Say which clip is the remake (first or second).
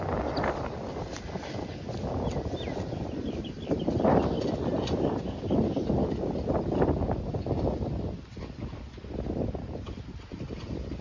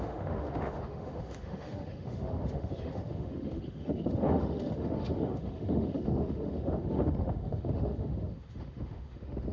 second